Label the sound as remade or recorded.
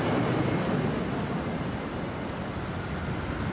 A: recorded